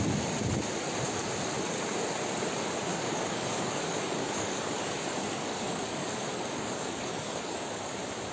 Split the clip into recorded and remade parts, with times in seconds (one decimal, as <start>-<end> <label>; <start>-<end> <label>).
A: 0.0-2.9 recorded; 2.9-7.9 remade; 7.9-8.3 recorded